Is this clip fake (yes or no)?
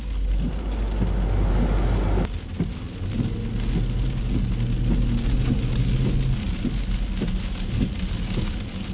no